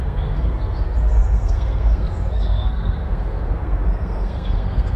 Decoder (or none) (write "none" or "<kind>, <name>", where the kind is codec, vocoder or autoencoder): codec, SNAC